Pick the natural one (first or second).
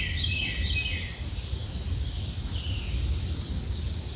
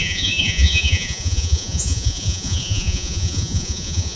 first